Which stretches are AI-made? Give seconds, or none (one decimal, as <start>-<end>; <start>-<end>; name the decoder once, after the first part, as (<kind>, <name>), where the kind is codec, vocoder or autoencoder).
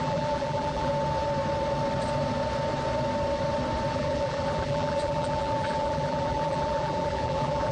0.0-0.9 (vocoder, BigVGAN v2); 3.9-7.7